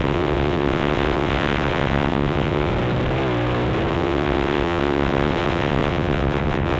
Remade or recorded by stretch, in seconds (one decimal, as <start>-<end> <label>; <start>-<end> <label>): 0.0-2.7 remade; 2.7-3.9 recorded; 3.9-6.8 remade